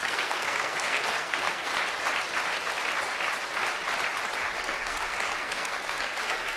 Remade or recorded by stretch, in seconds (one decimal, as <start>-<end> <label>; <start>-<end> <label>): 0.0-1.7 remade; 1.7-4.6 recorded; 4.6-6.6 remade